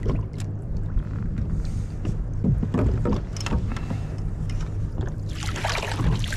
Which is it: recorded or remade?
recorded